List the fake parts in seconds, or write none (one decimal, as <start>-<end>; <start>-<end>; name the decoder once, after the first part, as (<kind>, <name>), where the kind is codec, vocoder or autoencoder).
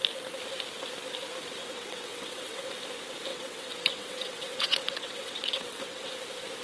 1.6-2.7 (vocoder, WaveNeXt); 3.3-6.1